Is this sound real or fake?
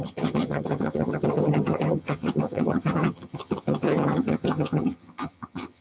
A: fake